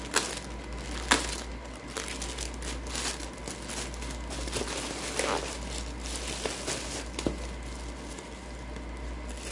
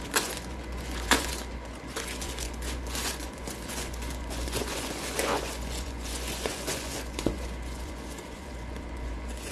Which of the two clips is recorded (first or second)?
first